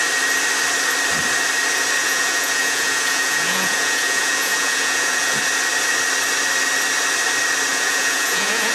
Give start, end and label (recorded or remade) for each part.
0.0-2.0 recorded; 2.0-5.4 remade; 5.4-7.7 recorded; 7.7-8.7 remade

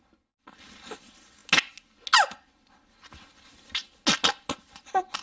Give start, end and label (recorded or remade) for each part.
0.0-5.2 recorded

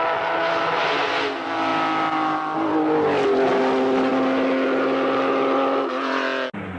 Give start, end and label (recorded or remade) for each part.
0.0-6.8 recorded

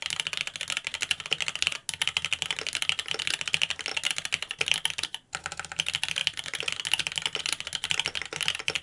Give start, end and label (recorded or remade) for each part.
0.0-8.8 recorded

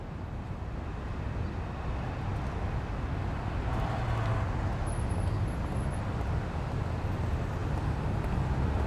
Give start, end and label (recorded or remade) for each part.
0.0-8.9 recorded